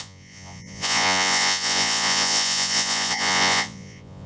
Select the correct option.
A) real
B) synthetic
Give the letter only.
B